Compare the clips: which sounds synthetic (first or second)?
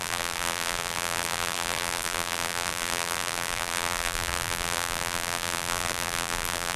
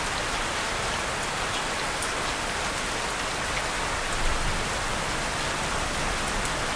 first